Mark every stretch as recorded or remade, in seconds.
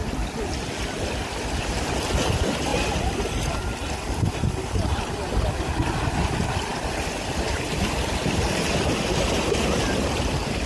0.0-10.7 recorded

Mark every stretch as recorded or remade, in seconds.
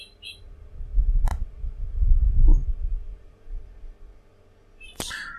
0.0-5.4 recorded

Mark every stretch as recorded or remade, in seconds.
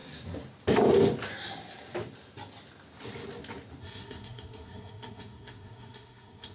0.0-3.8 recorded; 3.8-6.5 remade